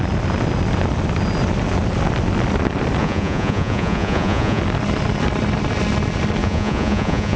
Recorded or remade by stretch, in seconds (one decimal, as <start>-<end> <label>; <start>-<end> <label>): 0.0-3.0 recorded; 3.0-4.6 remade; 4.6-6.4 recorded; 6.4-7.4 remade